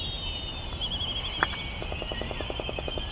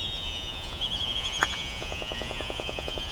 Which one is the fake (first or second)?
second